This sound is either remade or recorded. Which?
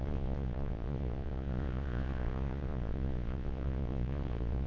remade